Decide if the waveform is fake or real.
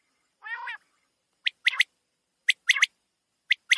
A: real